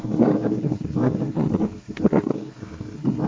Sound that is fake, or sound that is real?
fake